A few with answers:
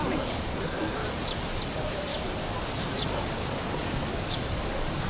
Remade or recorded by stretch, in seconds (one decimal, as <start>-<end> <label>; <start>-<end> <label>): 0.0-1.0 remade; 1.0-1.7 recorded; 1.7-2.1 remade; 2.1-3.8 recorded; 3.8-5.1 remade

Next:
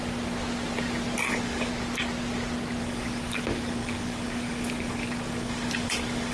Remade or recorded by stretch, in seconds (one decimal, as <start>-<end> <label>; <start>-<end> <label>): 0.0-1.2 recorded; 1.2-1.7 remade; 1.7-2.8 recorded; 2.8-6.3 remade

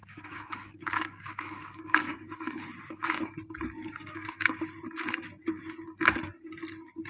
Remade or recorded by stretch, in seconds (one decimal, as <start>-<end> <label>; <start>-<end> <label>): 0.0-3.3 remade; 3.3-3.8 recorded; 3.8-4.6 remade; 4.6-7.1 recorded

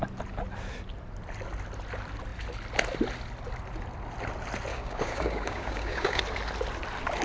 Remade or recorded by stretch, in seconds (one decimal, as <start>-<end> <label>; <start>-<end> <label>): 0.0-4.7 recorded; 4.7-6.2 remade; 6.2-7.2 recorded

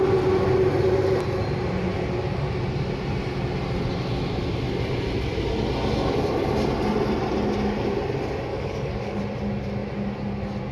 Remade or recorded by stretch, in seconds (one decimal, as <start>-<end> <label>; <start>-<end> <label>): 0.0-8.5 recorded; 8.5-9.2 remade; 9.2-10.7 recorded

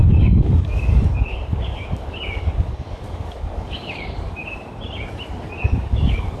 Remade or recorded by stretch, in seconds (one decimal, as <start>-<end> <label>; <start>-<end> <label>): 0.0-4.4 remade; 4.4-5.4 recorded; 5.4-6.4 remade

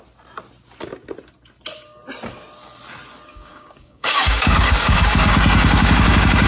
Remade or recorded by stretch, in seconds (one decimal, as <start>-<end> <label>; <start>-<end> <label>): 0.0-3.3 recorded; 3.3-6.5 remade